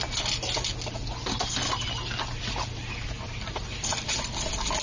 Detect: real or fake real